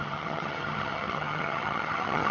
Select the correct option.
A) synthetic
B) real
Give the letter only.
A